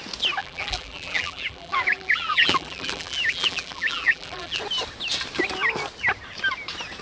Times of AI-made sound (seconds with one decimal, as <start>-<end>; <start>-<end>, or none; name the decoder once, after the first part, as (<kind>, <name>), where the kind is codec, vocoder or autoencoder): 0.4-4.6 (vocoder, BigVGAN v2)